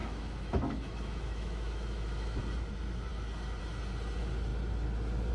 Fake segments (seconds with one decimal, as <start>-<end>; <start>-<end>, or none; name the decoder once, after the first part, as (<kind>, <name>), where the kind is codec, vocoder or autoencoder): 0.0-2.4 (autoencoder, DAC-VAE)